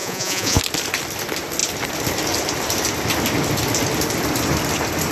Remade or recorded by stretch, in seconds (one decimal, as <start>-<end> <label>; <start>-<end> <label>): 0.0-0.6 remade; 0.6-5.1 recorded